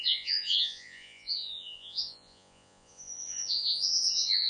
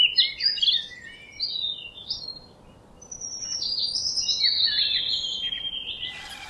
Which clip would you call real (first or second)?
second